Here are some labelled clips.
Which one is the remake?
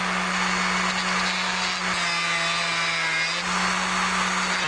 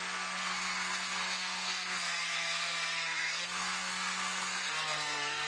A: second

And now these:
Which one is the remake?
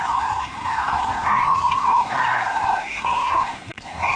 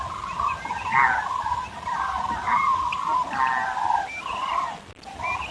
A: first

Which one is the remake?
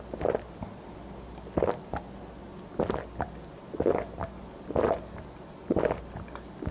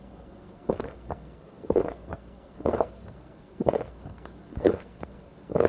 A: second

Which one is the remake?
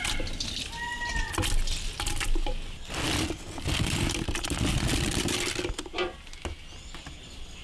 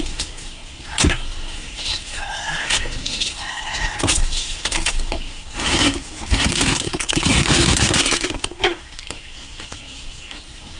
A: second